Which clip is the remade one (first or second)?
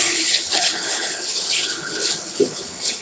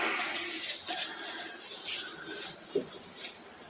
first